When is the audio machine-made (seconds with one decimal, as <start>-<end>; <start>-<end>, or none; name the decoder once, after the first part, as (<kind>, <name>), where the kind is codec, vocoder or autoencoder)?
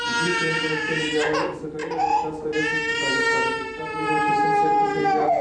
none